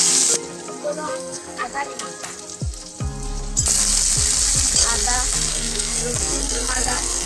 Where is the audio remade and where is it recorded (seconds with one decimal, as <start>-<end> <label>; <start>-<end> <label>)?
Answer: 0.0-0.8 recorded; 0.8-2.1 remade; 2.1-5.5 recorded; 5.5-7.3 remade